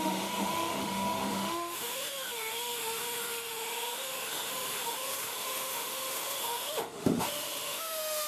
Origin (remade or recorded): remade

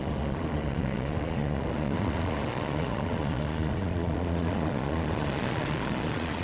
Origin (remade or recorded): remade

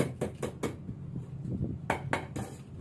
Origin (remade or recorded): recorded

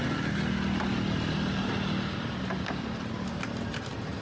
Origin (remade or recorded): recorded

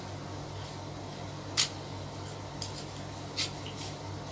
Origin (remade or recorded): recorded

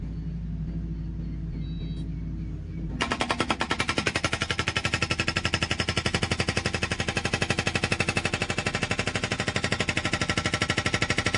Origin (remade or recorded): recorded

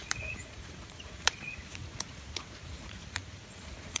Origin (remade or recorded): remade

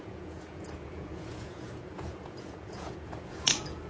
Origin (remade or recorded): remade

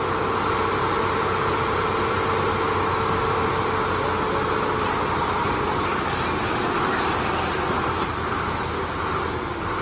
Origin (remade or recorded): recorded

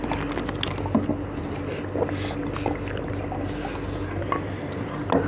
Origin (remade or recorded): recorded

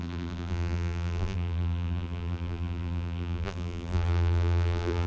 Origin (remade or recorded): remade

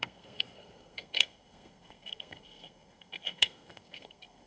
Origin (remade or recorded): remade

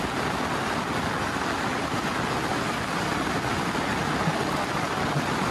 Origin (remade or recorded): recorded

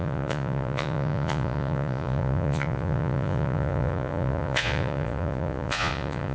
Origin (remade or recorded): remade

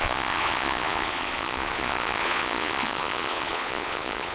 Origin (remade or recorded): remade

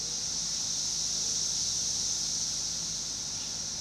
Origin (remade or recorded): recorded